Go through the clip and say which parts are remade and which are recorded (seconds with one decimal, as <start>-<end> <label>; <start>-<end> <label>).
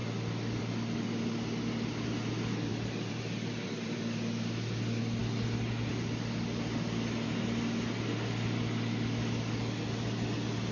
0.0-2.7 recorded; 2.7-4.0 remade; 4.0-10.7 recorded